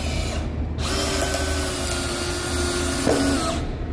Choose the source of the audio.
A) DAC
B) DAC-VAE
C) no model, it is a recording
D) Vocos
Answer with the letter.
C